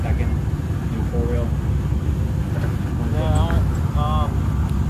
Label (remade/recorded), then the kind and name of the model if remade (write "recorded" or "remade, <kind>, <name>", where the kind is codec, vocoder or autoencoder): recorded